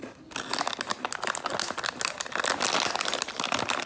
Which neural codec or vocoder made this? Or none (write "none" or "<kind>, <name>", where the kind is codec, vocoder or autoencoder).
none